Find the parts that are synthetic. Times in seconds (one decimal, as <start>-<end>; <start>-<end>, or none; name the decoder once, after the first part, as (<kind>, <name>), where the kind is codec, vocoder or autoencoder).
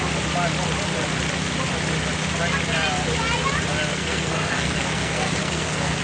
3.9-6.0 (codec, SNAC)